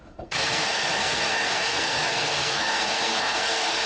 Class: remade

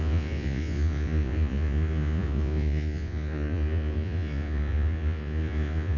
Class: remade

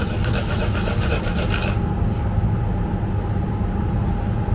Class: recorded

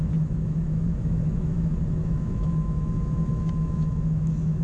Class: remade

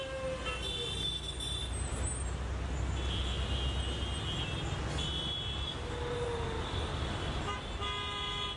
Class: recorded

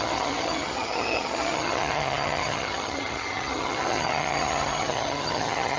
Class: remade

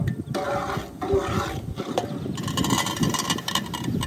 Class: recorded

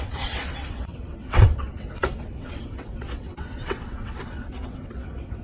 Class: remade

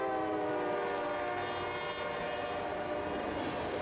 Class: recorded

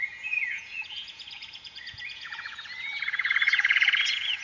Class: remade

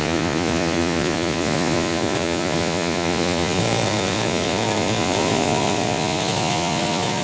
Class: remade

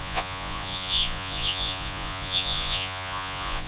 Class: remade